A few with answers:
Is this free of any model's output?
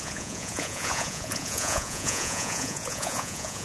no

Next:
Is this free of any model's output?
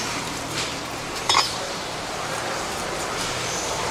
no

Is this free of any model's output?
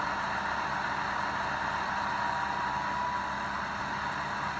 yes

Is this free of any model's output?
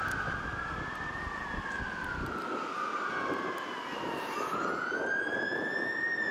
yes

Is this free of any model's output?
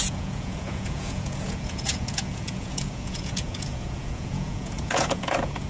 no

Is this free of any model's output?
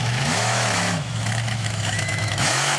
no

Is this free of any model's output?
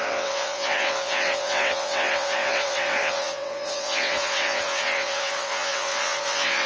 no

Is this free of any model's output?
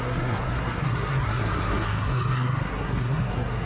no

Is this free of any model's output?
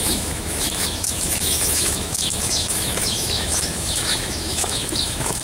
no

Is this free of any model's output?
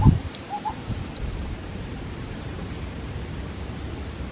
no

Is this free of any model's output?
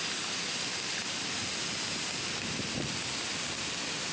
yes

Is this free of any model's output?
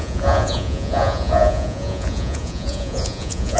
no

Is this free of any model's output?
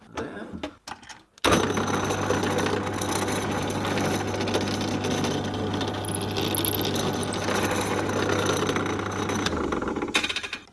yes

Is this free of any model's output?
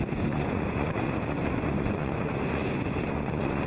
no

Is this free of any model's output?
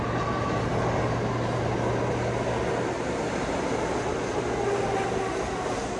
yes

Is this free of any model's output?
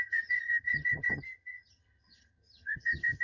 no